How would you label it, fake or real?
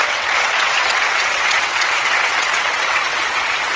fake